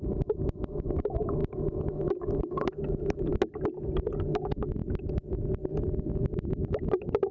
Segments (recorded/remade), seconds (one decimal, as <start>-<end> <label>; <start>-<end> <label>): 0.0-3.3 remade; 3.3-4.3 recorded; 4.3-4.8 remade; 4.8-6.0 recorded; 6.0-7.3 remade